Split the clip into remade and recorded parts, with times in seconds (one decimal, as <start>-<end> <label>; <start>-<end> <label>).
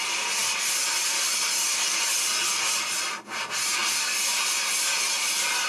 0.0-0.4 recorded; 0.4-3.0 remade; 3.0-5.7 recorded